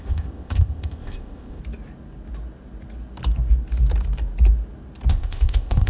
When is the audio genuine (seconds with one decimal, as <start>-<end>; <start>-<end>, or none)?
1.6-5.1